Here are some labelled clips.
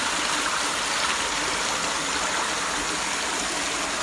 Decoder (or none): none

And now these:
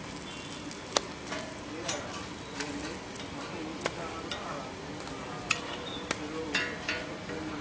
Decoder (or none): none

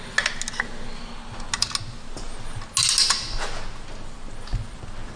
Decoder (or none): none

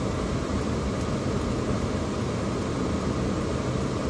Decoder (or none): none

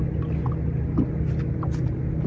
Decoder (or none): none